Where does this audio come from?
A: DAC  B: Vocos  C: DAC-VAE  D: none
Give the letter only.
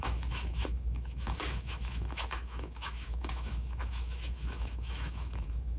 C